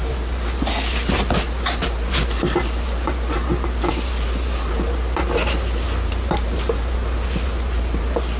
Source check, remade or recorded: recorded